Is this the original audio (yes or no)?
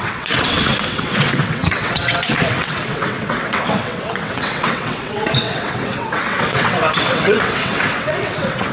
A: no